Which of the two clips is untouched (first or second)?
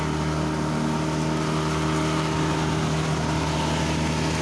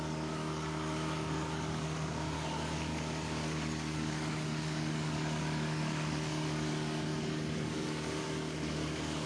first